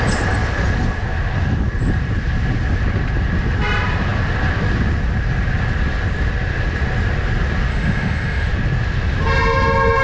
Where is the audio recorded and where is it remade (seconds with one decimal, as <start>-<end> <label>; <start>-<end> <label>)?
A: 0.0-7.7 recorded; 7.7-8.5 remade; 8.5-10.0 recorded

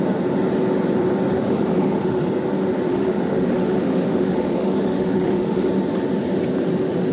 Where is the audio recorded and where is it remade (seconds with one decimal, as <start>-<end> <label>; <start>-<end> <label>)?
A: 0.0-1.3 recorded; 1.3-2.3 remade; 2.3-2.9 recorded; 2.9-5.7 remade; 5.7-7.1 recorded

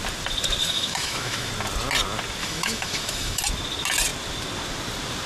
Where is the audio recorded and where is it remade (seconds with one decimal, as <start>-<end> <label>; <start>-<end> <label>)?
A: 0.0-0.6 recorded; 0.6-1.5 remade; 1.5-2.4 recorded; 2.4-3.4 remade; 3.4-5.3 recorded

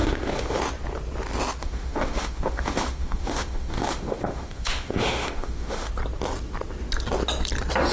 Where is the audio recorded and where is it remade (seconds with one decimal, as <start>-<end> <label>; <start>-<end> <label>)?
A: 0.0-0.6 remade; 0.6-1.6 recorded; 1.6-5.9 remade; 5.9-7.9 recorded

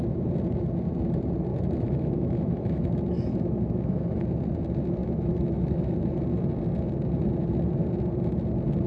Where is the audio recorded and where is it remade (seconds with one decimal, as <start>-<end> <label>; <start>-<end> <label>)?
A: 0.0-1.5 recorded; 1.5-4.2 remade; 4.2-5.0 recorded; 5.0-6.1 remade; 6.1-8.9 recorded

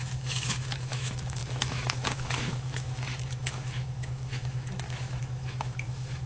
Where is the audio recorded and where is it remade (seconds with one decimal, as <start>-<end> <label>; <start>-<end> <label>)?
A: 0.0-6.3 remade

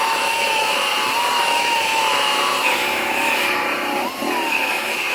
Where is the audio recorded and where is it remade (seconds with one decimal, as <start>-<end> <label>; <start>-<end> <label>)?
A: 0.0-0.8 remade; 0.8-1.4 recorded; 1.4-3.6 remade; 3.6-4.5 recorded; 4.5-5.1 remade